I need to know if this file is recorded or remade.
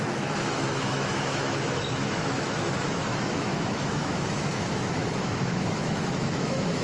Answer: remade